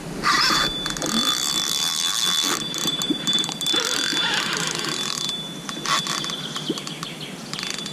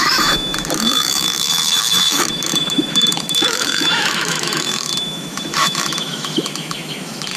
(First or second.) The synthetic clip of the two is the second